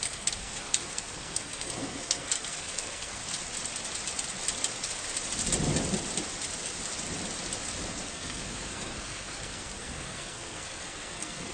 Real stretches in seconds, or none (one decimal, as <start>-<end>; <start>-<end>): 3.2-8.1